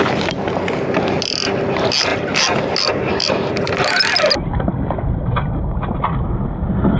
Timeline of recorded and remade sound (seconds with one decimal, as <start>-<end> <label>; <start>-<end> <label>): 0.0-7.0 recorded